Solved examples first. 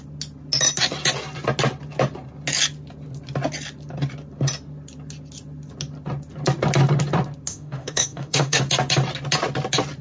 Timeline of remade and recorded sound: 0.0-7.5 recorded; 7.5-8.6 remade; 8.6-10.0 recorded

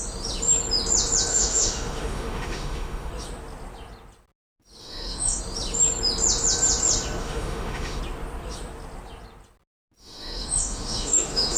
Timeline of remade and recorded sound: 0.0-1.3 recorded; 1.3-3.1 remade; 3.1-4.8 recorded; 4.8-5.4 remade; 5.4-7.2 recorded; 7.2-8.0 remade; 8.0-10.0 recorded; 10.0-11.6 remade

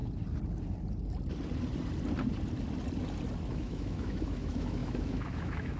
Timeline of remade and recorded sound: 0.0-3.5 recorded; 3.5-5.8 remade

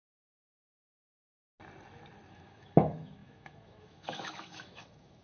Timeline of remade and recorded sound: 0.0-1.2 remade; 1.2-2.3 recorded; 2.3-5.2 remade

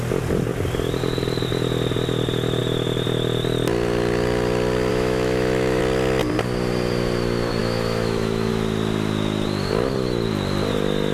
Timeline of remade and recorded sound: 0.0-4.9 recorded; 4.9-5.8 remade; 5.8-7.6 recorded; 7.6-8.5 remade; 8.5-11.1 recorded

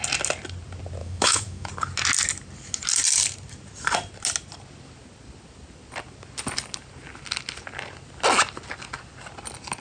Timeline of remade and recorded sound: 0.0-1.0 recorded; 1.0-1.7 remade; 1.7-9.8 recorded

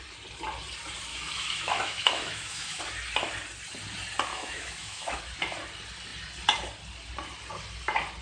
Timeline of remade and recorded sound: 0.0-1.1 recorded; 1.1-2.8 remade; 2.8-4.3 recorded; 4.3-5.2 remade; 5.2-8.2 recorded